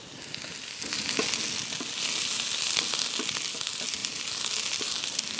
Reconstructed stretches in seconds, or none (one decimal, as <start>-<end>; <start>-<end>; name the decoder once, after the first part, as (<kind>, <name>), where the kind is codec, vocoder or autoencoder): none